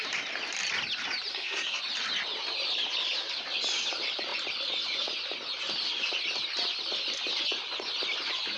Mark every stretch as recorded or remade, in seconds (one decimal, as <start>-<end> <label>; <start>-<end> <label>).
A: 0.0-1.3 recorded; 1.3-1.8 remade; 1.8-8.6 recorded